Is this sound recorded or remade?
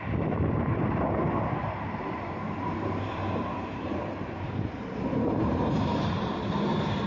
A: remade